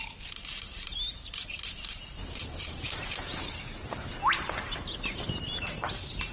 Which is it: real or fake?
fake